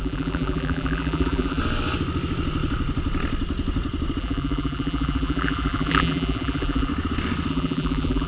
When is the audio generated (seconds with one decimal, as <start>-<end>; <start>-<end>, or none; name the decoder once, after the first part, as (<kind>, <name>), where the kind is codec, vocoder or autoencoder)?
0.0-1.6 (vocoder, BigVGAN v2); 4.2-6.9; 7.5-8.3